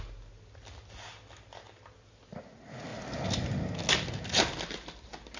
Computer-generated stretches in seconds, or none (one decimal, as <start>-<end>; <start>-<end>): none